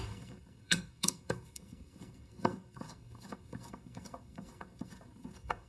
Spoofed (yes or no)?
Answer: yes